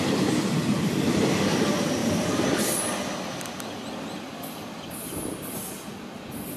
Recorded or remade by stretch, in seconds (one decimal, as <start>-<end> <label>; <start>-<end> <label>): 0.0-2.0 recorded; 2.0-2.8 remade; 2.8-6.6 recorded